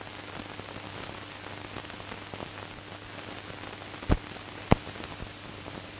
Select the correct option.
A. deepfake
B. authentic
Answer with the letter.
B